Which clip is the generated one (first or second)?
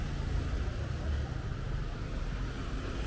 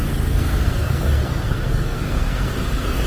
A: second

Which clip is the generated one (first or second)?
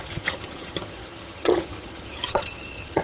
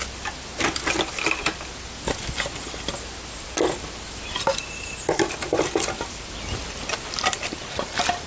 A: first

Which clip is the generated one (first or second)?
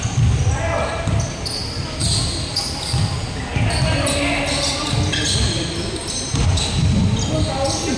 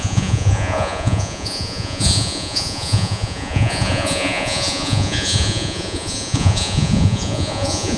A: second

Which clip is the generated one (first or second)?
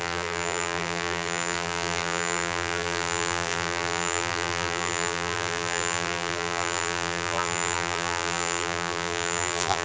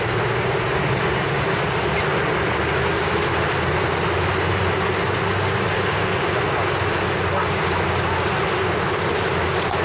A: first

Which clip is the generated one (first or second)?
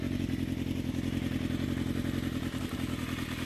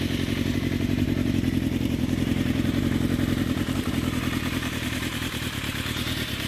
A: second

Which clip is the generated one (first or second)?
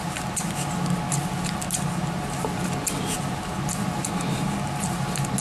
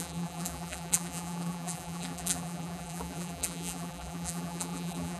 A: second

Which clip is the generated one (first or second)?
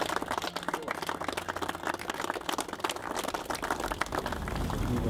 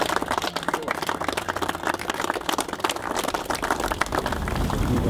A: second